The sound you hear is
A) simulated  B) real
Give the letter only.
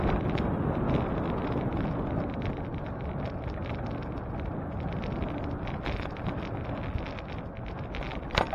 B